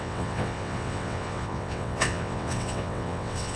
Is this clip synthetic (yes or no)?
yes